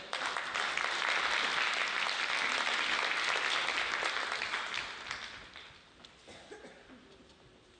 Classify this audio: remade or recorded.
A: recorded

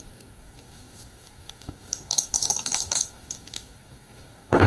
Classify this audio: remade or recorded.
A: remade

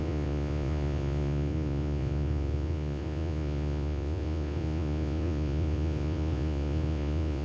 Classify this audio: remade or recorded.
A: remade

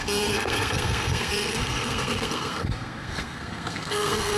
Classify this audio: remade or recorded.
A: remade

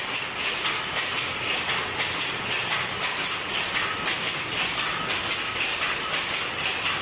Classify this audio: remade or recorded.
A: recorded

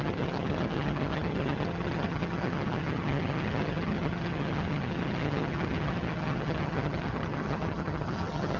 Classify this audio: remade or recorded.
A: remade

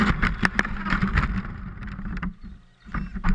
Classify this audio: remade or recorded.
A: recorded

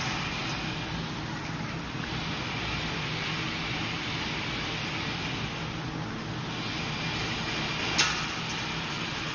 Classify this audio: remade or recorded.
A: recorded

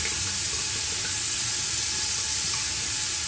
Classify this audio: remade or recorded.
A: recorded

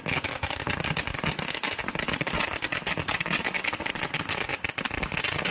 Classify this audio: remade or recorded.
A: recorded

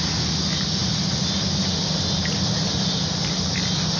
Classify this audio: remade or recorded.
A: recorded